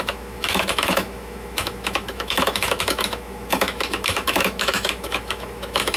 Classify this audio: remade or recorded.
remade